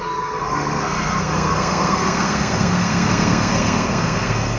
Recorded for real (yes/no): no